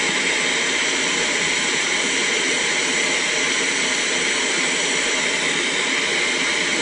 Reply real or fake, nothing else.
real